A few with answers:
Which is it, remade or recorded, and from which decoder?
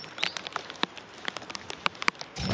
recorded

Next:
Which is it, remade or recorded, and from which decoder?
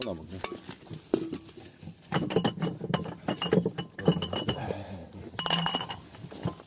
recorded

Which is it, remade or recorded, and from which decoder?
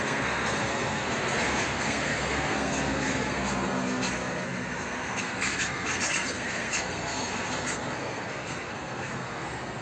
remade, codec, SNAC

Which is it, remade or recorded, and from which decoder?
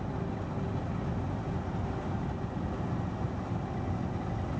recorded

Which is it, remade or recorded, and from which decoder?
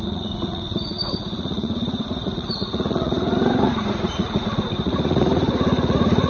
remade, vocoder, Vocos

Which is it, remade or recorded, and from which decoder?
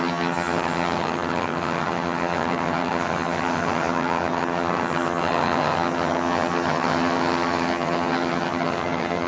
remade, vocoder, HiFi-GAN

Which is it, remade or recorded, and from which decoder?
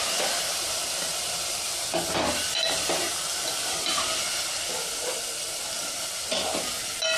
recorded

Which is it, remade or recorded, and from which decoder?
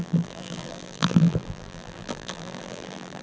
remade, vocoder, BigVGAN v2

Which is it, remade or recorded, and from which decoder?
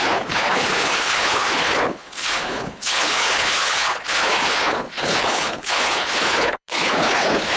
remade, codec, HILCodec